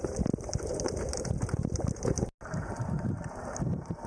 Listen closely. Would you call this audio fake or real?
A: real